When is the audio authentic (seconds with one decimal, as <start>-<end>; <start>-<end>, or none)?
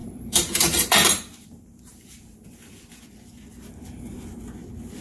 3.0-5.0